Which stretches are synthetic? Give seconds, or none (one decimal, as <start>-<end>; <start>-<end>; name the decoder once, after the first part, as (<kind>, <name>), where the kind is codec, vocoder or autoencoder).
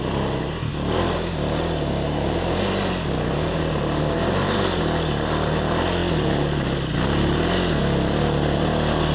none